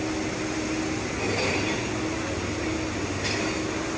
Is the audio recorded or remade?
recorded